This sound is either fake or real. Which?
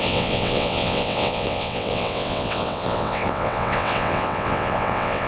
fake